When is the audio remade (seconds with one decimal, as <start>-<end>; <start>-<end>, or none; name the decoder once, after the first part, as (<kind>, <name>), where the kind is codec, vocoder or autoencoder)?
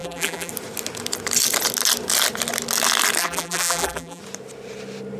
0.0-0.5 (vocoder, BigVGAN v2); 3.2-4.2